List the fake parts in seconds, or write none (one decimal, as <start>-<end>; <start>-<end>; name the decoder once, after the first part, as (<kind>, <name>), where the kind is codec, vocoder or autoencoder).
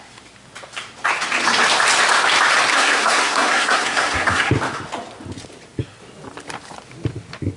2.7-4.5 (codec, SNAC)